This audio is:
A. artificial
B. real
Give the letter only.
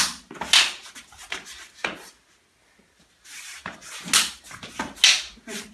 B